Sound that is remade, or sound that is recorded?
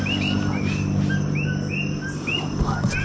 recorded